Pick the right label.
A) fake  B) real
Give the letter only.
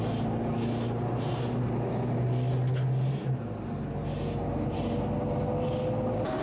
B